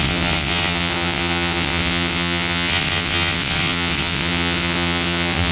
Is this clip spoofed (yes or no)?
yes